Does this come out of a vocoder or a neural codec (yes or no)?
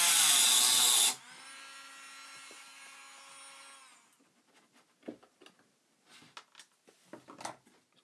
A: no